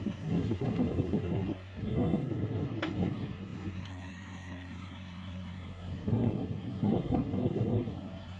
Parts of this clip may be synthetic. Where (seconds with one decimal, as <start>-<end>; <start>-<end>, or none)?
0.0-8.4